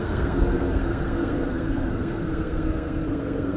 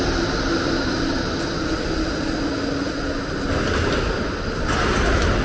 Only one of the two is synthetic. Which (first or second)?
first